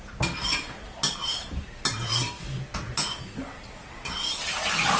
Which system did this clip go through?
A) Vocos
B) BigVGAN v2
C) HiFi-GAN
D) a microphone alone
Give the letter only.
D